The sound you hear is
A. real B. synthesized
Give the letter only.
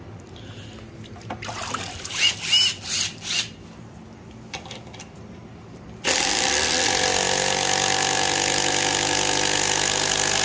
A